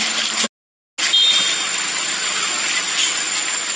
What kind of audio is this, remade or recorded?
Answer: recorded